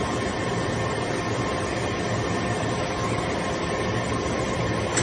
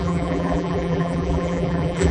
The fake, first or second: second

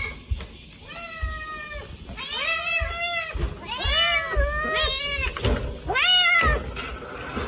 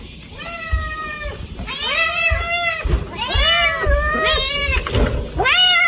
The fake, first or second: second